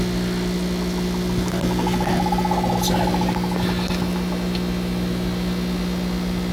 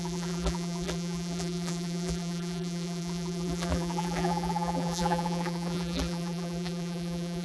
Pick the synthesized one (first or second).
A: second